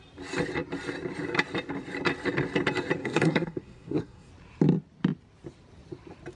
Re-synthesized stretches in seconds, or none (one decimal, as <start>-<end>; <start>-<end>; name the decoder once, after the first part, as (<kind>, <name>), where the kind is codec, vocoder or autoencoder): 3.0-4.3 (codec, SNAC)